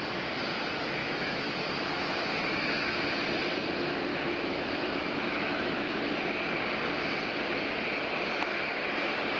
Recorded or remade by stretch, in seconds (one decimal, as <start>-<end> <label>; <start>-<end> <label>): 0.0-1.0 recorded; 1.0-3.0 remade; 3.0-4.1 recorded; 4.1-6.0 remade; 6.0-9.4 recorded